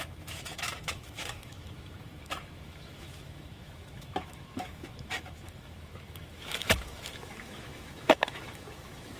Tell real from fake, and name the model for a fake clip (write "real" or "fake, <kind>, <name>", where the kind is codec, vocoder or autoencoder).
fake, autoencoder, DAC-VAE